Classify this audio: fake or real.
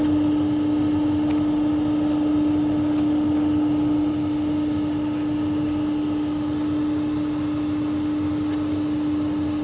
real